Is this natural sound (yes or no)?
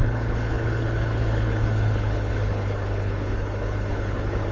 no